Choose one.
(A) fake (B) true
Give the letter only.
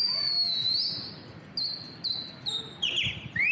B